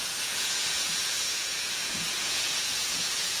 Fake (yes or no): yes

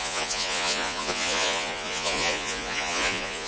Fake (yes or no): yes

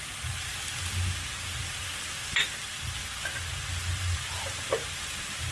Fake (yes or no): no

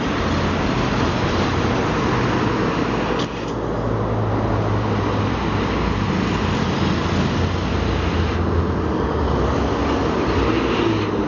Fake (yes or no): no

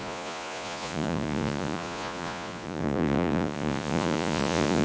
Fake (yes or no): yes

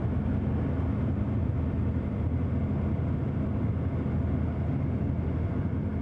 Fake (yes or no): no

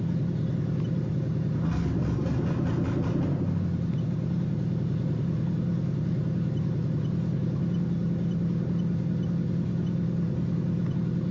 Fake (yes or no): no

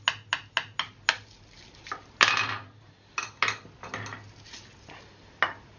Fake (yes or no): no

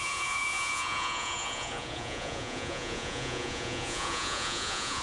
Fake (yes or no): yes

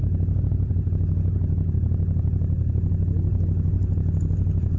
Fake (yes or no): no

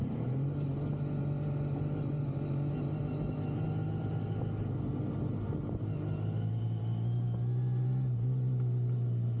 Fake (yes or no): no